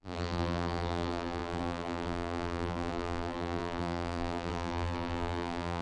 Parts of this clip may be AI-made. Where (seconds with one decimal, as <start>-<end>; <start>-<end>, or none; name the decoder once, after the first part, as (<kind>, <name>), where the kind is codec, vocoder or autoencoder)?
0.0-5.8 (vocoder, BigVGAN v2)